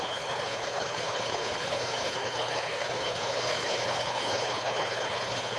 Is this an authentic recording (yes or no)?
no